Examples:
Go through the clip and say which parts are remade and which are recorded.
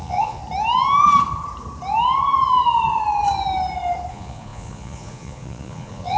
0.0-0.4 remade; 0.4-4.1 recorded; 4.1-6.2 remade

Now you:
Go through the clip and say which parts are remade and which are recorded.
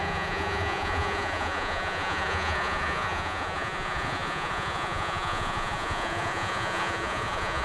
0.0-7.6 remade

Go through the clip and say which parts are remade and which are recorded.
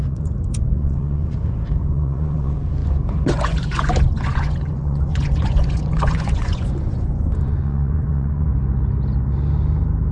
0.0-8.5 remade; 8.5-10.1 recorded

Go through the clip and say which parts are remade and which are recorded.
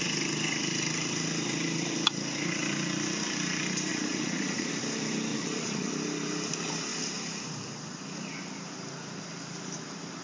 0.0-3.9 recorded; 3.9-4.7 remade; 4.7-5.3 recorded; 5.3-5.9 remade; 5.9-10.2 recorded